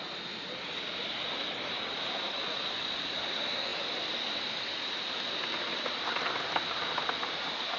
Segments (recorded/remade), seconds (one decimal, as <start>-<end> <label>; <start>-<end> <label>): 0.0-7.8 recorded